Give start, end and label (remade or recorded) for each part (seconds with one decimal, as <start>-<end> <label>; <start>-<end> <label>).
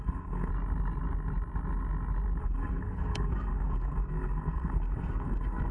0.0-0.5 remade; 0.5-2.4 recorded; 2.4-5.7 remade